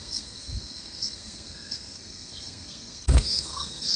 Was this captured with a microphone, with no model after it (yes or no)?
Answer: no